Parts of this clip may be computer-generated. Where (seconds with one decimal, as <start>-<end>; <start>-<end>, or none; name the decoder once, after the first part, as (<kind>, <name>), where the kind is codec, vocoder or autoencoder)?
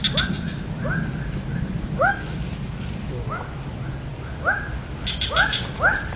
none